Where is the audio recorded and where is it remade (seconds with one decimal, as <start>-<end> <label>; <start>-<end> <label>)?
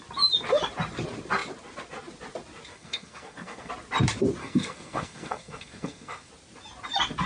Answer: 0.0-2.7 recorded; 2.7-3.7 remade; 3.7-4.4 recorded; 4.4-6.3 remade; 6.3-7.3 recorded